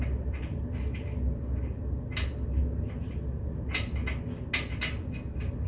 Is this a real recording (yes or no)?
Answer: yes